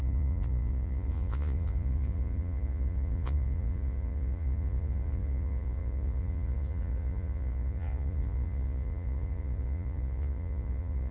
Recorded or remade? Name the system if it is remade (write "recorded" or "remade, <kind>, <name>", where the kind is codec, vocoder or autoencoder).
remade, vocoder, Vocos